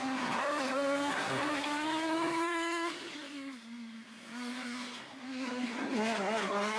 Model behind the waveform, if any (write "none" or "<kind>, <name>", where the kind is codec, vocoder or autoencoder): codec, SNAC